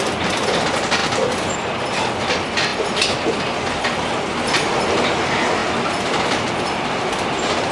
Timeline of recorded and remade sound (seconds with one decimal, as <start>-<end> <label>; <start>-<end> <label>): 0.0-1.0 remade; 1.0-1.5 recorded; 1.5-2.7 remade; 2.7-4.8 recorded; 4.8-5.6 remade; 5.6-6.2 recorded; 6.2-7.7 remade